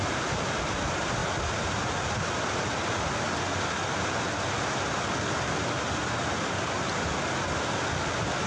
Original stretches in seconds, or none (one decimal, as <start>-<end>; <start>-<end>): 0.0-8.5